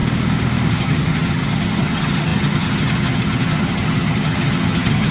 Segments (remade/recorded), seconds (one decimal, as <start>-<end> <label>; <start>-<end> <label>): 0.0-0.7 recorded; 0.7-5.1 remade